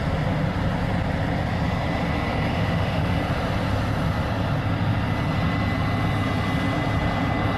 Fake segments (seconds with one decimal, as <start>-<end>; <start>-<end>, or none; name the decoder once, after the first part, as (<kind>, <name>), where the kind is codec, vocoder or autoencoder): 2.5-3.2 (autoencoder, DAC-VAE)